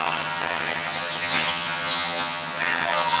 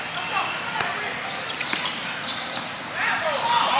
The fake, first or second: first